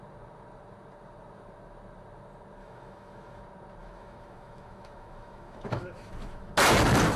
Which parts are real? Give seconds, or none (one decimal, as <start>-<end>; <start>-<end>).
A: 0.0-2.6; 3.4-3.8; 6.5-7.2